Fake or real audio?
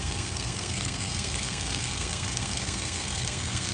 fake